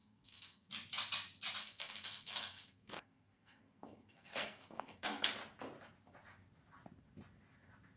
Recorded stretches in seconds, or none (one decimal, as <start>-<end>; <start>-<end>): 0.7-1.6; 5.3-8.0